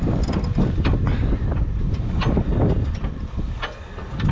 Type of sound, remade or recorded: recorded